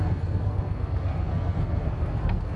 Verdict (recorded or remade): remade